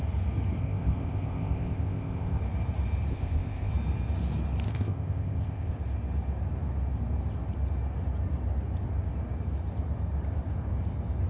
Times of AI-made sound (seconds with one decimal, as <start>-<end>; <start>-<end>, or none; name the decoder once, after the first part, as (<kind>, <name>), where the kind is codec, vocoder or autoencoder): 0.6-2.4 (codec, ZipCodec); 3.1-3.7; 4.7-5.7